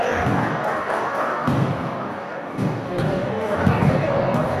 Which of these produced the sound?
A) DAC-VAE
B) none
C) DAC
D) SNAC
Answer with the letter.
C